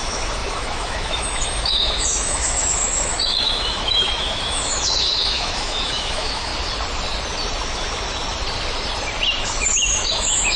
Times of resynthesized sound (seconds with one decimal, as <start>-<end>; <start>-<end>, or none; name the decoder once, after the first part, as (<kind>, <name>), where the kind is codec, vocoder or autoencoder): 0.0-6.5 (autoencoder, DAC-VAE); 9.4-10.6